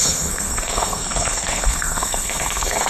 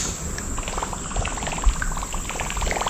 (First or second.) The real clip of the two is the second